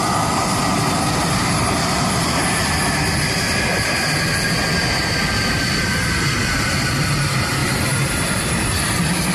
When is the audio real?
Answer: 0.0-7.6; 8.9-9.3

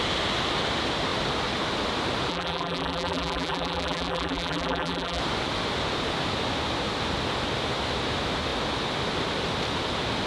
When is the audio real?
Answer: 0.0-2.3; 5.2-10.3

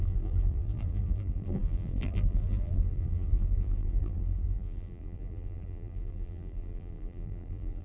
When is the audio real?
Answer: none

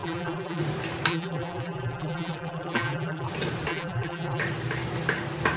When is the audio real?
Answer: 0.6-1.1; 3.3-3.7; 4.4-5.6

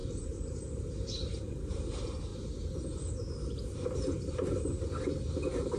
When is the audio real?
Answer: 2.3-5.8

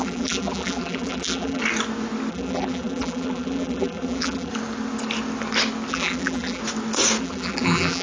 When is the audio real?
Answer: 1.6-2.3; 4.5-5.9; 6.6-7.2

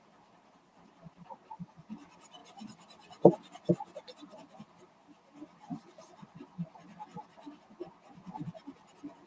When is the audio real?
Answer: 0.0-2.4; 7.6-9.3

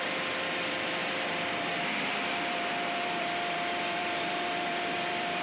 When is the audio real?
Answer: none